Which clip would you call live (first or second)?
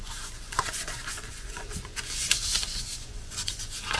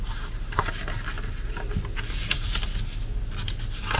second